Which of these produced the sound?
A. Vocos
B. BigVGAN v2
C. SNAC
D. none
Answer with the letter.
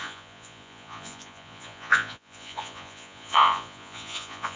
A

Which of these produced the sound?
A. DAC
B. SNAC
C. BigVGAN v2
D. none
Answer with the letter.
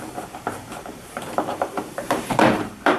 C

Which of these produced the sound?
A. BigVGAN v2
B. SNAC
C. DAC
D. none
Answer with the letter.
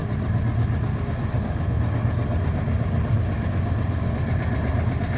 D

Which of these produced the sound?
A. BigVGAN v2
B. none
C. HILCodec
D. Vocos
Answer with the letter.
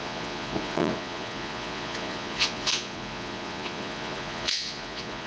D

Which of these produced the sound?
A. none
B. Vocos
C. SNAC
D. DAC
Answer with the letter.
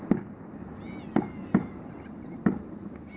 A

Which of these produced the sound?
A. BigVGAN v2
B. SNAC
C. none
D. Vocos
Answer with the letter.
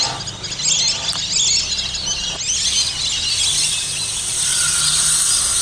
C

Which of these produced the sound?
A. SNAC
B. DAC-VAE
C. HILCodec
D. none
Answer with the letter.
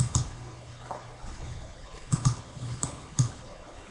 C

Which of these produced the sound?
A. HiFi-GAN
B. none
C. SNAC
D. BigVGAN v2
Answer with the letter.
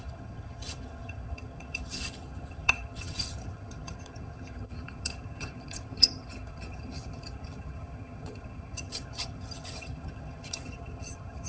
A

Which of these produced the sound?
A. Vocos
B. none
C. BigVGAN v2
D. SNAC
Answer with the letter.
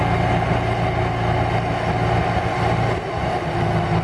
B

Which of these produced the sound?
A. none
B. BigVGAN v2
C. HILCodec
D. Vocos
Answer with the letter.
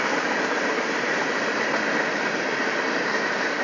B